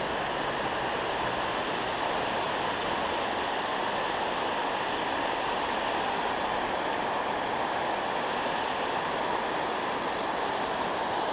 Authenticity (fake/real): real